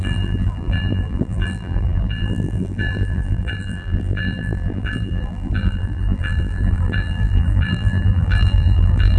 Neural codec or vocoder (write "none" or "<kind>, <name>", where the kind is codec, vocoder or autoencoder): vocoder, BigVGAN v2